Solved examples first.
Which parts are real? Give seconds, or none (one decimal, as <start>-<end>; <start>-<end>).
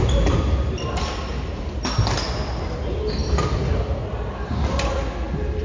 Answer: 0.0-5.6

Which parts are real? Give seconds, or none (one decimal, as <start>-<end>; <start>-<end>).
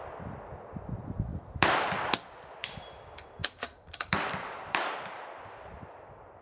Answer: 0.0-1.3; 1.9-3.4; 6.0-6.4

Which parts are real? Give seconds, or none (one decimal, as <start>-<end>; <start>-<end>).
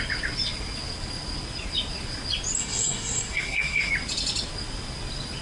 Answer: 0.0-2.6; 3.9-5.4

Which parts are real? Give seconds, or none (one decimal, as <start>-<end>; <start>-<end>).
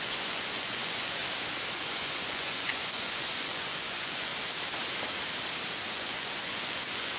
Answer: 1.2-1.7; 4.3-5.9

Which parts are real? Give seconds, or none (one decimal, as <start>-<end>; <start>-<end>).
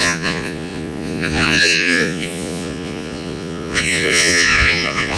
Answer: none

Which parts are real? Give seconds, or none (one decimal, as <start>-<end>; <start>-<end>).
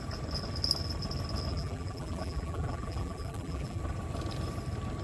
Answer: 0.0-1.5; 3.8-5.0